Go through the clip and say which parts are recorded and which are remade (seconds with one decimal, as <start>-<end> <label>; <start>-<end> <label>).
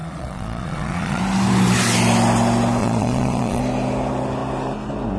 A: 0.0-1.2 remade; 1.2-2.8 recorded; 2.8-3.6 remade; 3.6-5.2 recorded